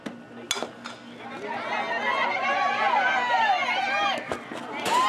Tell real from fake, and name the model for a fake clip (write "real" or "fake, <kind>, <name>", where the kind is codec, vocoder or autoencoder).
real